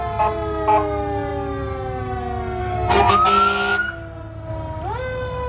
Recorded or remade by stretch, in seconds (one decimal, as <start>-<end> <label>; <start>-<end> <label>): 0.0-2.6 recorded; 2.6-3.1 remade; 3.1-5.5 recorded